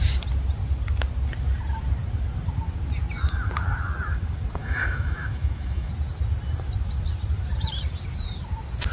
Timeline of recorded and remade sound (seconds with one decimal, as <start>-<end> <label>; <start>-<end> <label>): 0.0-4.6 recorded; 4.6-5.9 remade; 5.9-8.9 recorded